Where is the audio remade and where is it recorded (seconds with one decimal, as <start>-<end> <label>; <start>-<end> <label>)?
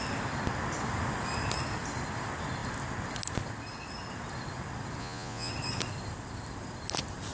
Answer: 0.0-5.0 recorded; 5.0-5.5 remade; 5.5-7.3 recorded